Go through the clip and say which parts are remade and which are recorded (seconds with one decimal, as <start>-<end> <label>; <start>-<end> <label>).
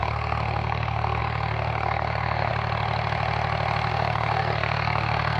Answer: 0.0-2.5 remade; 2.5-3.9 recorded; 3.9-5.4 remade